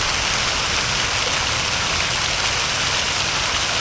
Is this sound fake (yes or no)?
no